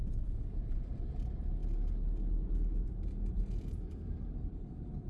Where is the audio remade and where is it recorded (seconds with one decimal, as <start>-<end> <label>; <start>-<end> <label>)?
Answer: 0.0-5.1 remade